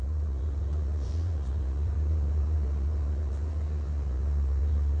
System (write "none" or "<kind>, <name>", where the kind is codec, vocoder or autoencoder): vocoder, Vocos